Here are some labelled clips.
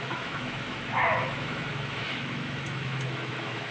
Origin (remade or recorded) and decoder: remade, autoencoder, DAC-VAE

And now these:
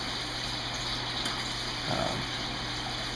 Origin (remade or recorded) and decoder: recorded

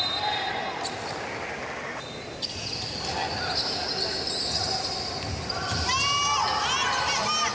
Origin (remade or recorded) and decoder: recorded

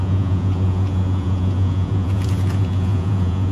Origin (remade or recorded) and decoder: remade, vocoder, Vocos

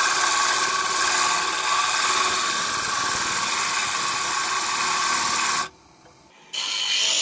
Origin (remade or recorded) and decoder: recorded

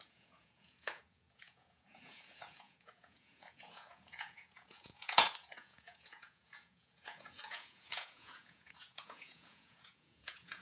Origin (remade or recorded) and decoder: remade, vocoder, Vocos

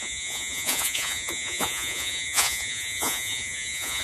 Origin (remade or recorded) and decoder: remade, vocoder, Vocos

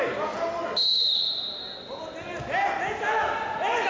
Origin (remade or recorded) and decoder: recorded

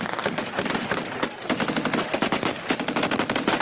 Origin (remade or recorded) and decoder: recorded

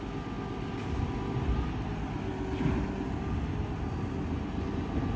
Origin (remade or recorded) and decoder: recorded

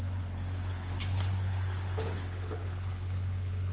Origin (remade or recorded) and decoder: remade, codec, HILCodec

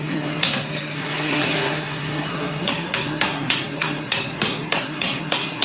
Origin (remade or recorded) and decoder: remade, codec, SNAC